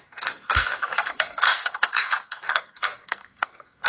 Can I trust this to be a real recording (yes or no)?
no